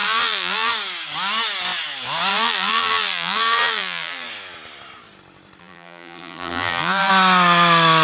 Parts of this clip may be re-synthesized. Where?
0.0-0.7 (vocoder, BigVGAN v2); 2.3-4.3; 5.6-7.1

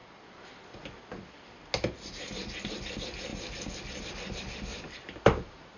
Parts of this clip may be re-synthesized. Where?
4.7-5.8 (vocoder, BigVGAN v2)

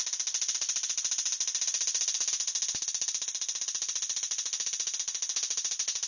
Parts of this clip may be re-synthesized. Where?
none

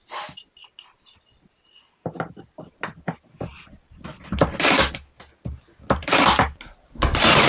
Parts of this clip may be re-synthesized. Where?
none

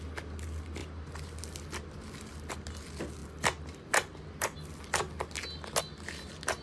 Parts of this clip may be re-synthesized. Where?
none